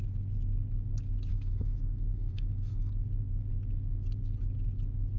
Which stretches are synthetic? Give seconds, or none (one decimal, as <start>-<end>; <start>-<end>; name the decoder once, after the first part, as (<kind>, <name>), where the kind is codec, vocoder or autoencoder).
1.3-2.9 (codec, SNAC)

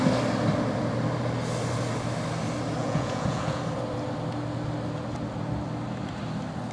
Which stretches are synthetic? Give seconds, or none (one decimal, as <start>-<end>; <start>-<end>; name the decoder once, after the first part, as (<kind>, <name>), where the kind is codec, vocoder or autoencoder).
2.8-3.6 (vocoder, Vocos)

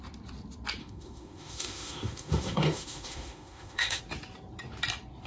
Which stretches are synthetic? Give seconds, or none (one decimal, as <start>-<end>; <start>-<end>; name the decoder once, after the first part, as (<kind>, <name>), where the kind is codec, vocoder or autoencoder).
0.8-4.0 (autoencoder, DAC-VAE)

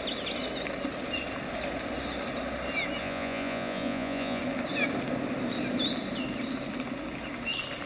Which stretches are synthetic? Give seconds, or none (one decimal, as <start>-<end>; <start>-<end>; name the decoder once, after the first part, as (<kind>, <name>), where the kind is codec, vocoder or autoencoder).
3.0-4.4 (vocoder, Vocos)

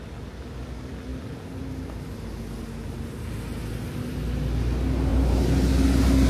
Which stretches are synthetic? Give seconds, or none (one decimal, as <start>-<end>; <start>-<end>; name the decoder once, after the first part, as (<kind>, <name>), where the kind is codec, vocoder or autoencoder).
5.1-5.7 (vocoder, BigVGAN v2)

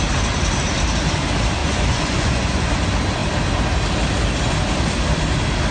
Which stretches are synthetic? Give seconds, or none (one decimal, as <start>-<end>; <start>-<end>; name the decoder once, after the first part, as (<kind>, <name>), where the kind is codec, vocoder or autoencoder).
1.6-2.7 (vocoder, Vocos)